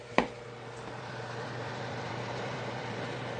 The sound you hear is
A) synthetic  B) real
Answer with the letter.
A